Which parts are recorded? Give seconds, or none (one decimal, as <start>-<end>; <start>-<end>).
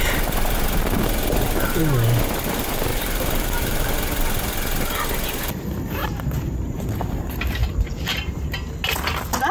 0.0-2.9; 3.9-6.0; 6.9-7.6; 8.5-9.5